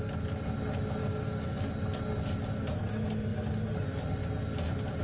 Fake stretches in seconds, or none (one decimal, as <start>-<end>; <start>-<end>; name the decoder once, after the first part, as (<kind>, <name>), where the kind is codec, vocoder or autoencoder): 1.0-1.7 (codec, DAC)